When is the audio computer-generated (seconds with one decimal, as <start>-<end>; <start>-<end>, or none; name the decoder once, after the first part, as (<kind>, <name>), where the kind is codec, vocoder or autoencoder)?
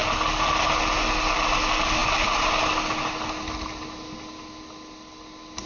none